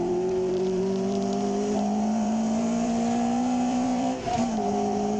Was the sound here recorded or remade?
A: remade